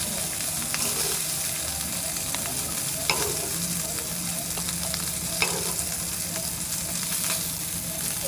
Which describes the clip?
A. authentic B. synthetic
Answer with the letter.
A